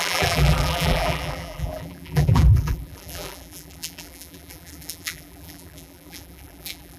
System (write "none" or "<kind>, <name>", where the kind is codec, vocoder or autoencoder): vocoder, BigVGAN v2